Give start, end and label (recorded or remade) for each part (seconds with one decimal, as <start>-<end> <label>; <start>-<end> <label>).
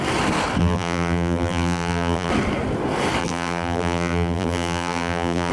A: 0.0-0.6 recorded; 0.6-2.3 remade; 2.3-3.2 recorded; 3.2-5.5 remade